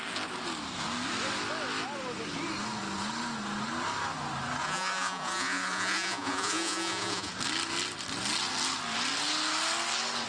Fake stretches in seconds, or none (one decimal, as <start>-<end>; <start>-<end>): 4.6-7.3